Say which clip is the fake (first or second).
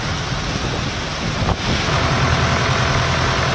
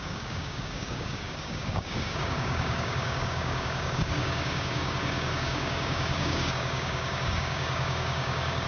second